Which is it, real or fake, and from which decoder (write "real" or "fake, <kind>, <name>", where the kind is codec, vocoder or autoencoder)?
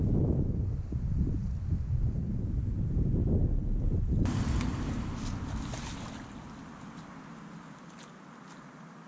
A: real